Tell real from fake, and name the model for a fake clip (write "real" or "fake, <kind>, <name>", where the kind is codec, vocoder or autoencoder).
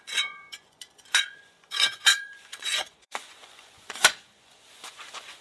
fake, vocoder, Vocos